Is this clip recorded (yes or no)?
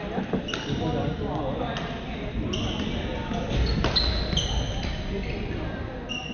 yes